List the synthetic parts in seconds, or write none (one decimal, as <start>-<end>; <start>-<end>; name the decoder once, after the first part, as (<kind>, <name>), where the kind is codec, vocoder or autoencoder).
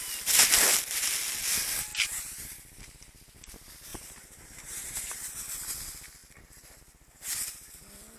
3.9-5.1 (vocoder, BigVGAN v2)